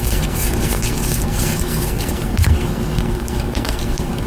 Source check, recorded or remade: remade